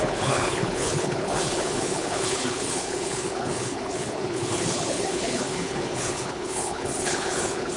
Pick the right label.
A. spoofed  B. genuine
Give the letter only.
A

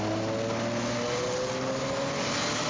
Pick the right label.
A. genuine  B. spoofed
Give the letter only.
A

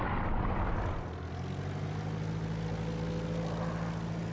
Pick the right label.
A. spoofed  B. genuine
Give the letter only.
B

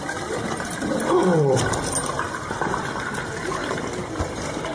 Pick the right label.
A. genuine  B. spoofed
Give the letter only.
B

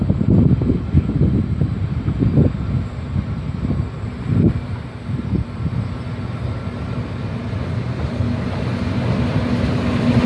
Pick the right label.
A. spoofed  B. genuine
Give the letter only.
B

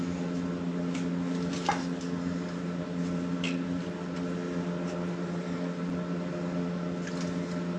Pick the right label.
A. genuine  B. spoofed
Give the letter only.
A